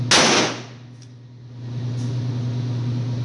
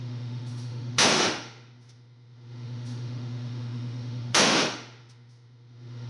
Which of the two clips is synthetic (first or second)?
second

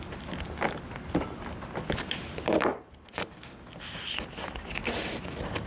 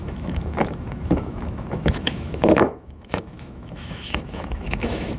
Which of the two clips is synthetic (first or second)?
second